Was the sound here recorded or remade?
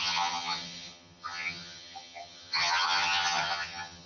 remade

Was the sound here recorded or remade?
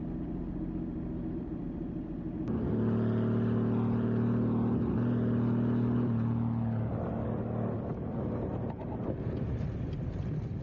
recorded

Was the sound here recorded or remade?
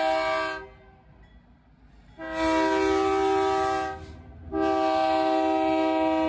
recorded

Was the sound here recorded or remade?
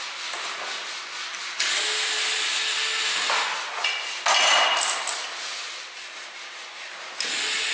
recorded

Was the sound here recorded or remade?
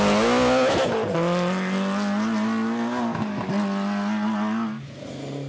recorded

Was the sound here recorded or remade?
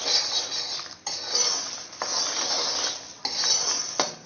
recorded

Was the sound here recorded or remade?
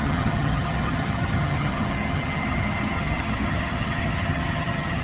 remade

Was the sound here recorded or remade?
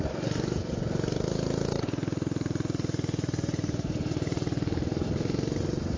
recorded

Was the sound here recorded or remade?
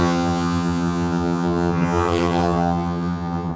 remade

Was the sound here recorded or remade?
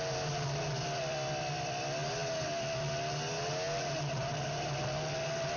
recorded